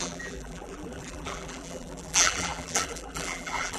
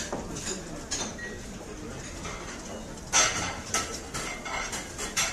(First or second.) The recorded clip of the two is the second